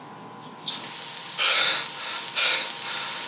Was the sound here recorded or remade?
recorded